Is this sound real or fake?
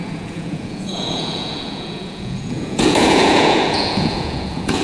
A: fake